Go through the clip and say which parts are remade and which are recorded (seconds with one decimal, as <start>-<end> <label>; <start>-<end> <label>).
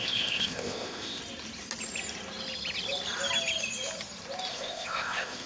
0.0-1.2 remade; 1.2-4.5 recorded; 4.5-5.5 remade